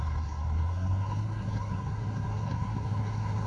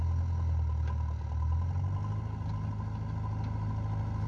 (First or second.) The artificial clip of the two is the first